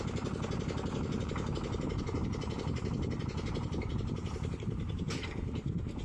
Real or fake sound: fake